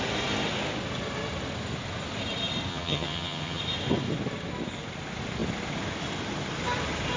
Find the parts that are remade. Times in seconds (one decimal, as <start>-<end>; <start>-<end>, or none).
2.7-3.6